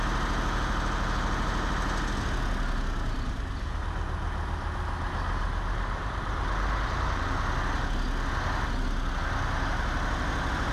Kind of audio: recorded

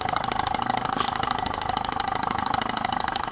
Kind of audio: remade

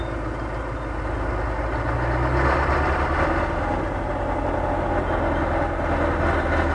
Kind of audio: recorded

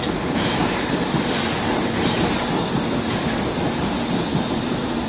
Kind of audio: recorded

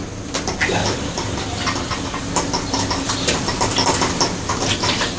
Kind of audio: recorded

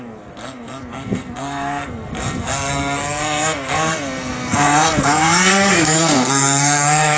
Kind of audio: remade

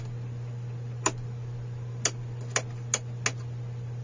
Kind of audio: recorded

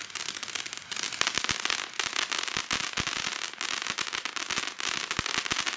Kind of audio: recorded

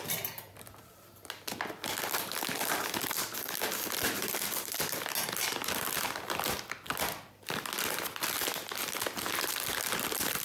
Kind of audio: recorded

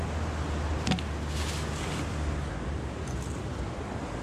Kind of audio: recorded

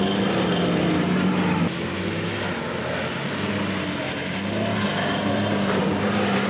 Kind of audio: recorded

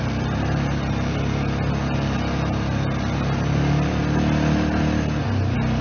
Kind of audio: recorded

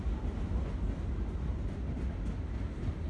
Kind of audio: recorded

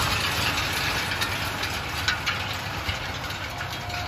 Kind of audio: recorded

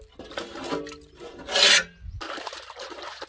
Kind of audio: recorded